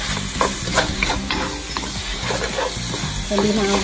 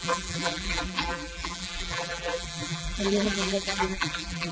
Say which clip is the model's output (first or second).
second